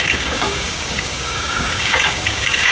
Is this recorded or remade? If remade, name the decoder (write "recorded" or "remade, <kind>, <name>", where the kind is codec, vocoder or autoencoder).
remade, codec, DAC